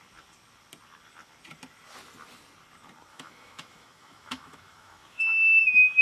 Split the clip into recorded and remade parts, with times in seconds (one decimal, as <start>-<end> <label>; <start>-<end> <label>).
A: 0.0-3.1 recorded; 3.1-5.6 remade; 5.6-6.0 recorded